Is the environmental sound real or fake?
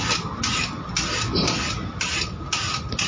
real